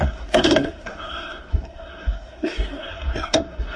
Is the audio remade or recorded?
remade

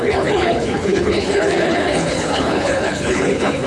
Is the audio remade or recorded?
remade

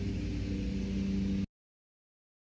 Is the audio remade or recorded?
recorded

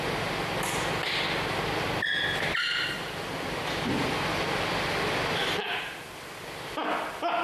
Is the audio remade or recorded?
recorded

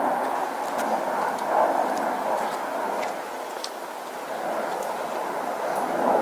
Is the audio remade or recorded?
recorded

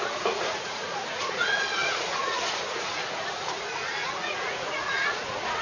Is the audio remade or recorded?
remade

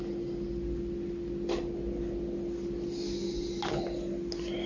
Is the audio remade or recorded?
recorded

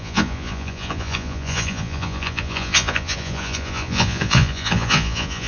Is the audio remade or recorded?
remade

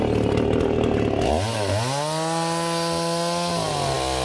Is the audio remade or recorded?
recorded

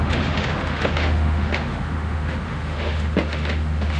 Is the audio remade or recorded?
remade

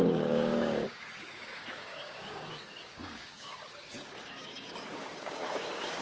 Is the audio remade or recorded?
remade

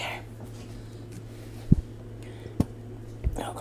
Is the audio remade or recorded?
recorded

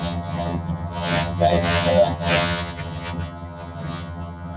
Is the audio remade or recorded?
remade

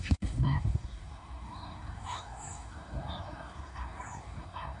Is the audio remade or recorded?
remade